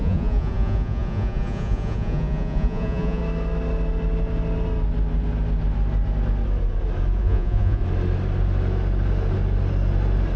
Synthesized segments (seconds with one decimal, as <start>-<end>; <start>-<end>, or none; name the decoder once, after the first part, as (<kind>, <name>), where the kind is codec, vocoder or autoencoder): 0.0-3.2 (vocoder, Vocos); 7.2-7.8